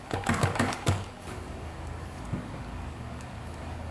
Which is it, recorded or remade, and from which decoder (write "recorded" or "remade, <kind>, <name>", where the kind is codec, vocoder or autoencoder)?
remade, codec, DAC